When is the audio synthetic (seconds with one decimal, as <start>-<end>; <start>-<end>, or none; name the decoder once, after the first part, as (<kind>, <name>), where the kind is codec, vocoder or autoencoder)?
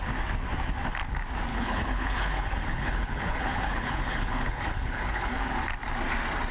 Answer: 1.5-5.4 (codec, HILCodec)